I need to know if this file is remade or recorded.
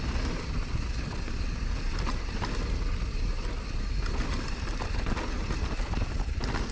recorded